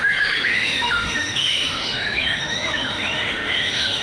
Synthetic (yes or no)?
yes